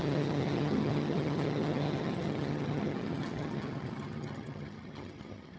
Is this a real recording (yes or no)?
no